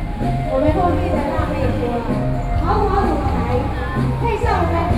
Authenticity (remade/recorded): recorded